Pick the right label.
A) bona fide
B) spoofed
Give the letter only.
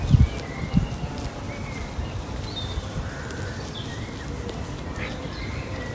A